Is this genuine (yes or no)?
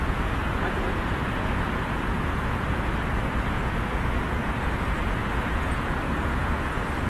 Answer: no